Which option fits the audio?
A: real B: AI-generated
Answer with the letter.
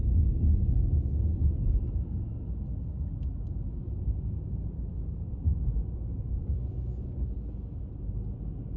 A